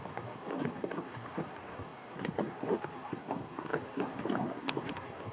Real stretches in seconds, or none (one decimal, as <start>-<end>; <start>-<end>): none